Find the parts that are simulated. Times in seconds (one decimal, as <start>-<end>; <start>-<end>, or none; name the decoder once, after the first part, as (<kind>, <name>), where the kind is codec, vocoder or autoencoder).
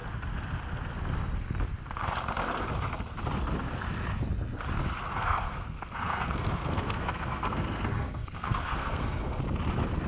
5.1-9.4 (codec, SNAC)